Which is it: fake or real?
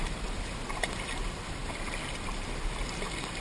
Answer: real